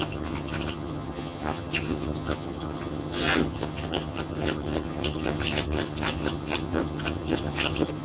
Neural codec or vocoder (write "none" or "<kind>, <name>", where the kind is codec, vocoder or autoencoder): vocoder, HiFi-GAN